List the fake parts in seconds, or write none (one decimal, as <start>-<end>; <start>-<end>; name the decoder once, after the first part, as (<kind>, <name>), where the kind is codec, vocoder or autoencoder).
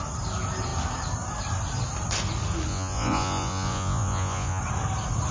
2.7-4.6 (vocoder, Vocos)